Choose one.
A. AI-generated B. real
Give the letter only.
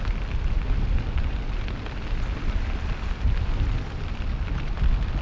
B